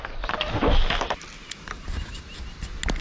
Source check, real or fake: real